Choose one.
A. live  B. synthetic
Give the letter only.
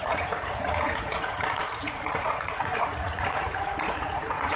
B